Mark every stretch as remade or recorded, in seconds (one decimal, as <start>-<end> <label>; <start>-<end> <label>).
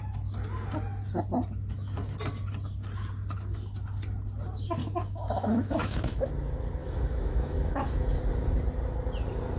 0.0-4.8 recorded; 4.8-6.3 remade; 6.3-6.8 recorded; 6.8-8.2 remade; 8.2-9.6 recorded